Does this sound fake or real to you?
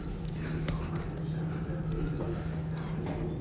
real